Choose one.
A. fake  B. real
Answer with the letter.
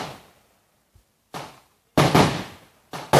B